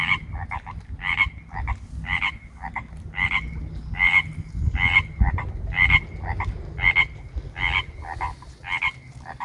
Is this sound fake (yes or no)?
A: no